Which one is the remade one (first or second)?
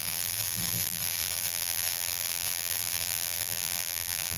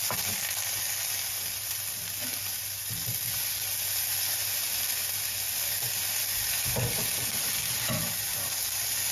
first